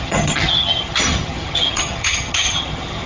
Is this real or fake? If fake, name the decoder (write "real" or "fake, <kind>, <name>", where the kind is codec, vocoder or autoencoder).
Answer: fake, vocoder, HiFi-GAN